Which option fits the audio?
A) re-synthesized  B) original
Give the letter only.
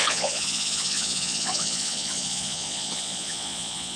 A